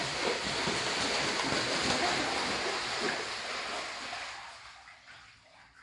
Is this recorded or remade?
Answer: recorded